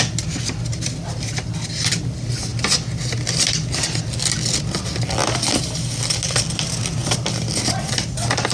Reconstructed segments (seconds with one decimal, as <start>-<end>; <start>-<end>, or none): none